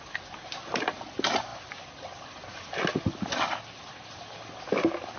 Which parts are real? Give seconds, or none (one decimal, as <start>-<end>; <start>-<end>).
0.0-5.2

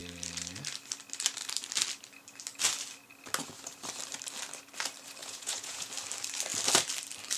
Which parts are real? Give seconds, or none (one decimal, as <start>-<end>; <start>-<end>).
0.0-5.2; 5.9-7.4

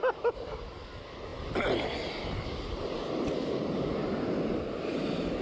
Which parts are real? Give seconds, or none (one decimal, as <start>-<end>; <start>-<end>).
0.0-5.4

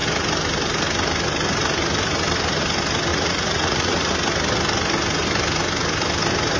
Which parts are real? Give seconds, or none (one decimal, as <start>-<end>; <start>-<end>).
0.0-3.1; 4.1-6.6

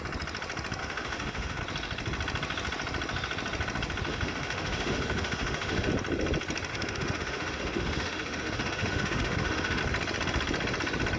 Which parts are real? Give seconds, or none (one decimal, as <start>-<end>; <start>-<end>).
0.0-0.8; 1.6-4.1; 5.9-6.7; 9.8-11.2

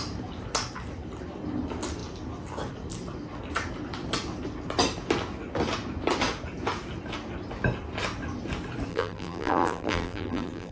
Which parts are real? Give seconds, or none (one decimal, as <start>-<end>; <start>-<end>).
0.0-8.9